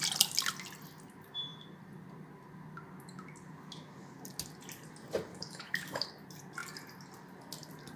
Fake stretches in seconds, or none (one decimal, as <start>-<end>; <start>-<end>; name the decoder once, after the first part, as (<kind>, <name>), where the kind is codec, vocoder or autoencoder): 5.3-6.1 (autoencoder, DAC-VAE)